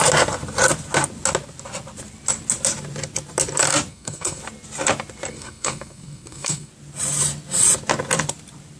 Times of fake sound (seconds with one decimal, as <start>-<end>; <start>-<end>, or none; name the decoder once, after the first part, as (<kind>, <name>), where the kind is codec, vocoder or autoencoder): 3.9-4.4 (codec, SNAC); 5.3-6.7

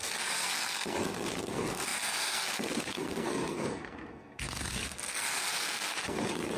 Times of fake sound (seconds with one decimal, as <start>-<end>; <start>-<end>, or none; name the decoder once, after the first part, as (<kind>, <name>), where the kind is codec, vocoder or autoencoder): 0.0-6.6 (codec, SNAC)

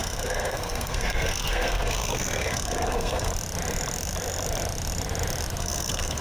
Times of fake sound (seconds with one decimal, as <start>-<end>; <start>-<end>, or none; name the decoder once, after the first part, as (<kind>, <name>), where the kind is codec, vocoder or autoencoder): 0.0-3.3 (codec, SNAC); 5.6-6.2

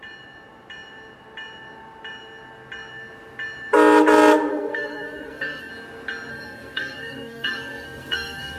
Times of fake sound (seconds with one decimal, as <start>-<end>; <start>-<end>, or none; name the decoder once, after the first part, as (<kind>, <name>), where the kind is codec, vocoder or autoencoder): 4.5-5.7 (codec, SNAC); 6.3-8.6